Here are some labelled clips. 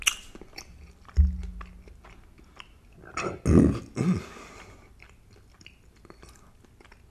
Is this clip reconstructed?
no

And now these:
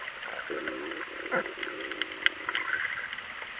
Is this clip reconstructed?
no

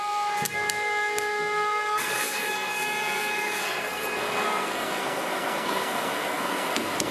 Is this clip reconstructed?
yes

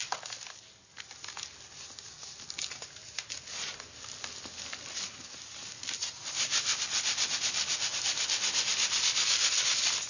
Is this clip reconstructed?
no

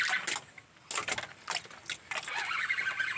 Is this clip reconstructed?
no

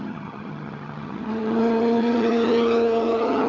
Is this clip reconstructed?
yes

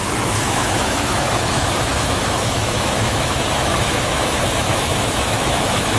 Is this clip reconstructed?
yes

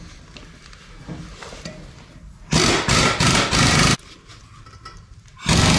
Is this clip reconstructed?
no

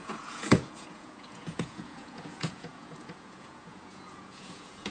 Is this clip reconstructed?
yes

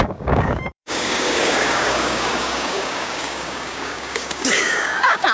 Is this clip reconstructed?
yes